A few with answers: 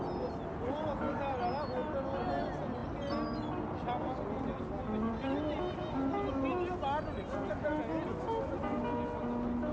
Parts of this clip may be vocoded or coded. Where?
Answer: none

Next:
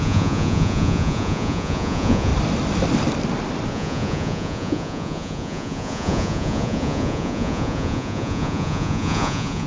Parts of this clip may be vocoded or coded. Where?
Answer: 0.0-2.3 (vocoder, Vocos); 3.7-9.7

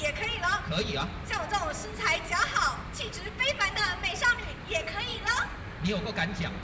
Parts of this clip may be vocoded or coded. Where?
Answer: 5.1-5.6 (vocoder, Vocos)

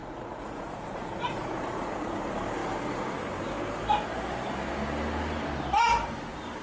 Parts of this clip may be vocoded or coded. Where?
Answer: 0.0-1.9 (vocoder, Vocos)

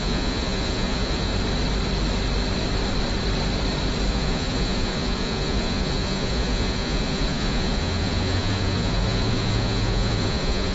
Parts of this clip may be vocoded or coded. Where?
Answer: 0.0-1.3 (vocoder, Vocos); 4.1-10.7

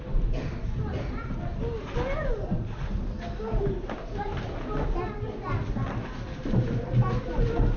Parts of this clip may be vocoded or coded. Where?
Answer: none